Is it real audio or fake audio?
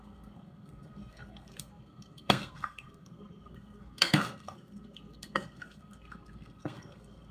fake